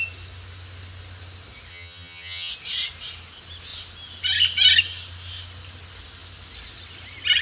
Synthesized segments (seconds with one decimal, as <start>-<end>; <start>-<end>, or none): 1.7-2.5